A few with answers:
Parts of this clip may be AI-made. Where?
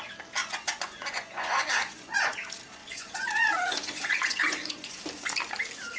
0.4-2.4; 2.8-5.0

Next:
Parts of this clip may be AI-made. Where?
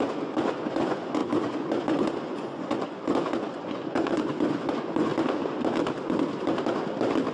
0.0-5.1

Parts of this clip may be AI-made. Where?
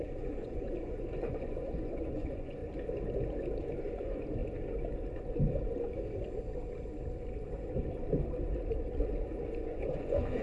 0.0-2.6; 3.8-4.4; 9.5-10.4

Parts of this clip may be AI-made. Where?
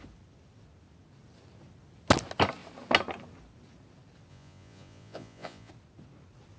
4.3-5.7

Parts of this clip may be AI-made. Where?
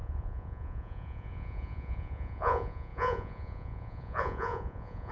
0.0-5.1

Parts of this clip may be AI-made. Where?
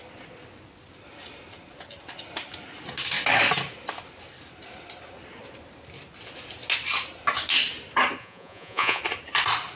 8.2-9.0